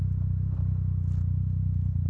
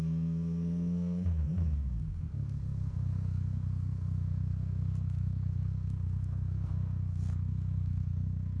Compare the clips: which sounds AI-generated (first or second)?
second